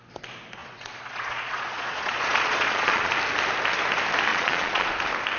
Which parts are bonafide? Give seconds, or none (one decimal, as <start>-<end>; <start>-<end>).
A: 0.0-0.6; 3.1-4.3; 4.9-5.4